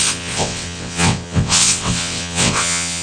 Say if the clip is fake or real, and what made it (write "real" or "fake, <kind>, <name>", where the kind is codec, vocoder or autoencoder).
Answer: fake, vocoder, WaveNeXt